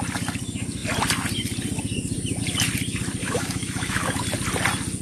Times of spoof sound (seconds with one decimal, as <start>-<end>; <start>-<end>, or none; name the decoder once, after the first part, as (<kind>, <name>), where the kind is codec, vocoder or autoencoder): 3.2-4.2 (autoencoder, DAC-VAE)